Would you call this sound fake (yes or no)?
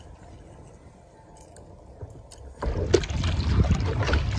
no